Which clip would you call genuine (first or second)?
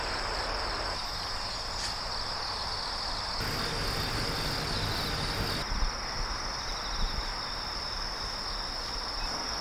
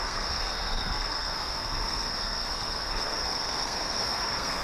first